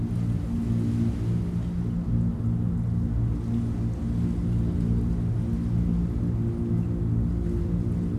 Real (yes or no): yes